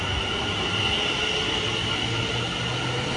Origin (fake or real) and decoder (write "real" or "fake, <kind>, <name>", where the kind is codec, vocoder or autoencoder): real